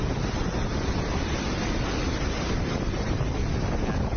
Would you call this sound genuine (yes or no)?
yes